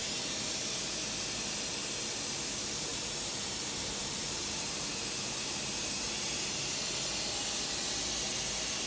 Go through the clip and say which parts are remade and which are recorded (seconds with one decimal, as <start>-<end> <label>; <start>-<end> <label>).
0.0-0.6 remade; 0.6-2.9 recorded; 2.9-6.3 remade; 6.3-8.9 recorded